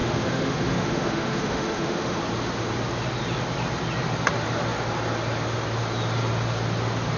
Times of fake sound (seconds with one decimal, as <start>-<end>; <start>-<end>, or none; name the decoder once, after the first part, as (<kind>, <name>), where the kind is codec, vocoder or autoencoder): 0.0-2.2 (autoencoder, DAC-VAE)